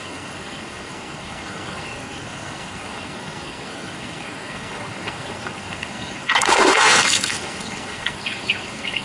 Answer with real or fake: fake